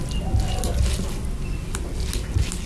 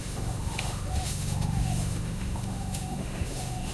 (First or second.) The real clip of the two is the first